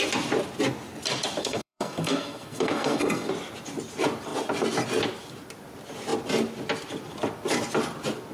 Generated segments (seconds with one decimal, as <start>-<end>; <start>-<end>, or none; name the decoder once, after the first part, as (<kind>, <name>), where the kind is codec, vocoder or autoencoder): 1.4-3.3 (codec, SNAC)